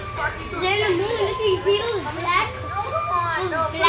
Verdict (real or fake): real